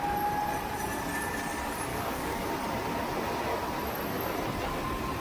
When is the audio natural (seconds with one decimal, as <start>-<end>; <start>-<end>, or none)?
0.0-1.9; 2.5-5.2